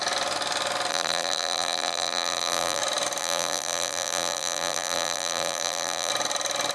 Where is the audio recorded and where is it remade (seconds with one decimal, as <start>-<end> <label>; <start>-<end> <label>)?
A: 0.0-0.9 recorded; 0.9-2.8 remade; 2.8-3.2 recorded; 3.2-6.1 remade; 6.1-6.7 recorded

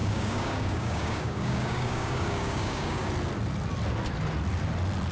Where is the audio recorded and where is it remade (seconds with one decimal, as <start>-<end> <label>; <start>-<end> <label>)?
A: 0.0-3.1 remade; 3.1-5.1 recorded

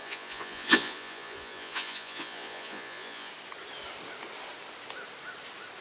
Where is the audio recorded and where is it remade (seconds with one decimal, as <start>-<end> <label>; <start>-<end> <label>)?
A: 0.0-3.3 remade; 3.3-5.8 recorded

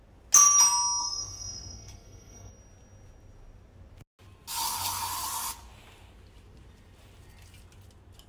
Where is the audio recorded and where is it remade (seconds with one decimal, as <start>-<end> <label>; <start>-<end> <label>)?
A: 0.0-1.0 recorded; 1.0-2.5 remade; 2.5-8.3 recorded

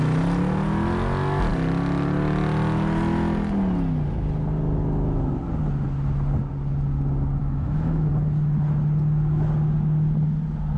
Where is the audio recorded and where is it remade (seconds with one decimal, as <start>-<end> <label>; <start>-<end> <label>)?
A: 0.0-7.4 recorded; 7.4-8.1 remade; 8.1-10.8 recorded

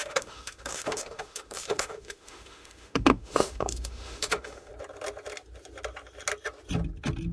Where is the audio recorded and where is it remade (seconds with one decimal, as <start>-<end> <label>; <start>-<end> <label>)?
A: 0.0-4.7 remade; 4.7-7.3 recorded

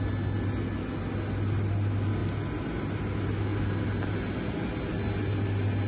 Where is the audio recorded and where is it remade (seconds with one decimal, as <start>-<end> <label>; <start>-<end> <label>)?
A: 0.0-5.9 recorded